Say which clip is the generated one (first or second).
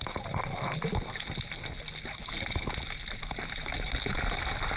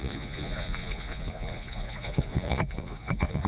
second